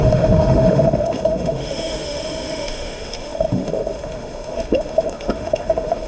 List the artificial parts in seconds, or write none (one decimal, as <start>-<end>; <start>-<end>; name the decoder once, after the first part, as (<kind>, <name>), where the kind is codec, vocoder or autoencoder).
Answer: 0.0-6.1 (autoencoder, DAC-VAE)